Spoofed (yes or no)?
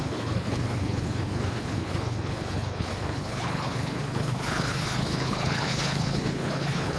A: yes